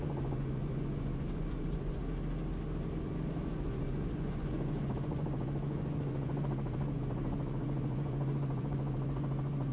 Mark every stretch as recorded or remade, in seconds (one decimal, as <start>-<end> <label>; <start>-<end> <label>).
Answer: 0.0-2.0 remade; 2.0-3.5 recorded; 3.5-9.7 remade